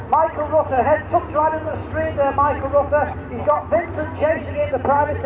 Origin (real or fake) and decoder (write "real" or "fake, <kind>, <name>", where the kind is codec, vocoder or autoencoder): real